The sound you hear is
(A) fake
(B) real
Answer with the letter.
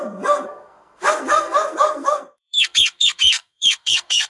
A